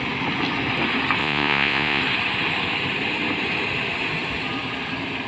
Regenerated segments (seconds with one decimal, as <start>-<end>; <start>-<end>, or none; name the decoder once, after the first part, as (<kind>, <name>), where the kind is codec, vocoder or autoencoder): 1.2-2.0 (vocoder, Vocos)